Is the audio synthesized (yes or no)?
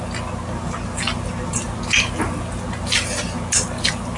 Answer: no